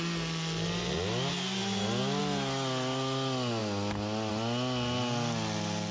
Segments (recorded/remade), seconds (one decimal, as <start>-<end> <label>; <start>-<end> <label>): 0.0-5.9 recorded